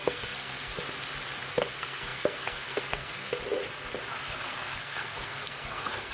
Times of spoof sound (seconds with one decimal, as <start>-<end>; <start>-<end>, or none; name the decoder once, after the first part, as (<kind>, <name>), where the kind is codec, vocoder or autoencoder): 0.0-0.7 (codec, SNAC); 1.5-3.3; 4.1-6.1